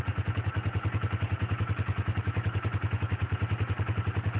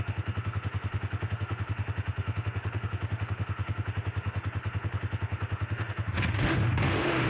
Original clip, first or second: first